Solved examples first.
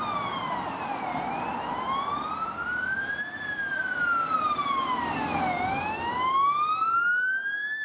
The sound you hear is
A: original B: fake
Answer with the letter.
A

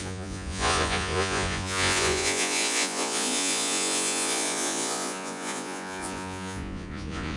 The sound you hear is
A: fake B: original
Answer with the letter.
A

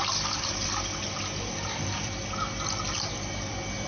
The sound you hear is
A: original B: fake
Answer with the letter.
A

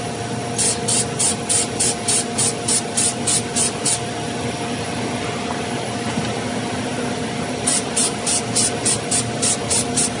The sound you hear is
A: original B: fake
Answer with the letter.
A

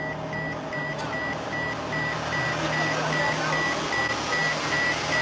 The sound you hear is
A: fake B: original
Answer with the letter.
B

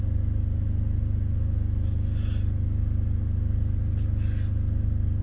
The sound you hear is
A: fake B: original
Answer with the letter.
B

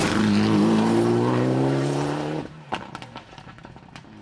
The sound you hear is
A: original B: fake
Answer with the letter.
A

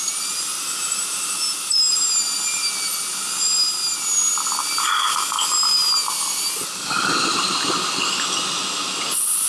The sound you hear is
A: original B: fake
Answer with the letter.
A